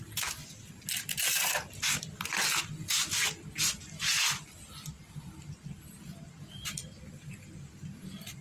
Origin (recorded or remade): recorded